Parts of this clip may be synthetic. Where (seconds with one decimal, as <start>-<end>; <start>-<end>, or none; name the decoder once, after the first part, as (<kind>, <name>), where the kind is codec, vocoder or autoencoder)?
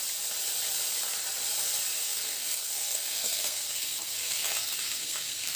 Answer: 2.0-5.6 (codec, SNAC)